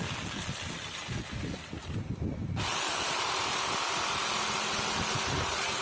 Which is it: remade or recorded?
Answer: recorded